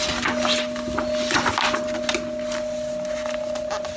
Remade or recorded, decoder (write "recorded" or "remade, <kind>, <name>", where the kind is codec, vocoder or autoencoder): recorded